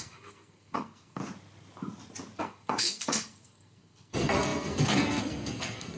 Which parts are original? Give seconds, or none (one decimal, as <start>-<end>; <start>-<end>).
1.2-2.4